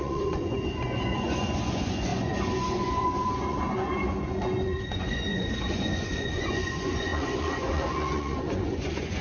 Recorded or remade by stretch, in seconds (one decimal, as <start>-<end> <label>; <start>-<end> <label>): 0.0-9.2 remade